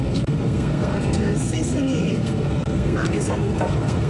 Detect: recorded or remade remade